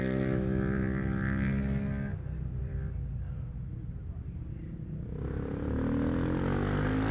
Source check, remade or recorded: recorded